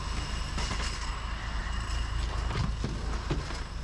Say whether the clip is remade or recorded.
recorded